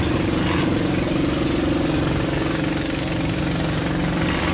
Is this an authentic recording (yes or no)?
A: yes